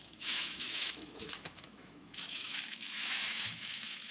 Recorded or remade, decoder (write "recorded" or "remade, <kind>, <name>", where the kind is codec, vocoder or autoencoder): remade, autoencoder, DAC-VAE